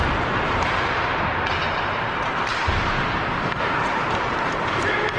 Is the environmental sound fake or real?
fake